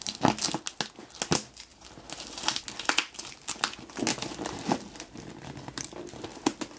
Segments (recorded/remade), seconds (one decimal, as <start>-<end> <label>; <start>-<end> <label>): 0.0-6.8 recorded